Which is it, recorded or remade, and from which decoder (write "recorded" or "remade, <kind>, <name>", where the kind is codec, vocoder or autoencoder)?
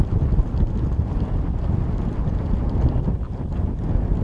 recorded